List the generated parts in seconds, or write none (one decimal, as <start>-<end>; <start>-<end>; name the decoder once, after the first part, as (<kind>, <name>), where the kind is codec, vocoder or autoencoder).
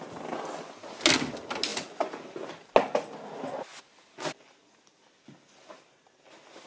none